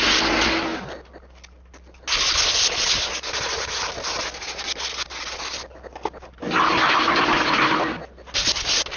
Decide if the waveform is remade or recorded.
recorded